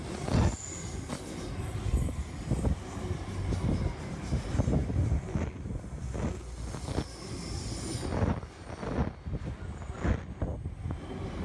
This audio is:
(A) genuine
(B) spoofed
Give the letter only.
A